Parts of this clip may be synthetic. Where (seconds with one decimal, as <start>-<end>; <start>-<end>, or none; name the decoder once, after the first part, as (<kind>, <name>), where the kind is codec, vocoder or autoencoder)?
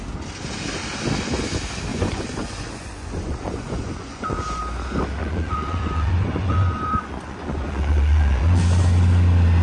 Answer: 1.9-4.6 (vocoder, Vocos); 5.2-8.6